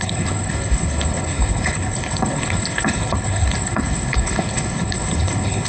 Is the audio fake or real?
fake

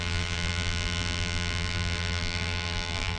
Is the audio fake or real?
fake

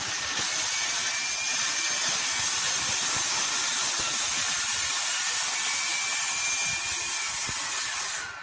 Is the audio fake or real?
real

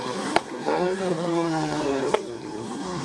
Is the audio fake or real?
fake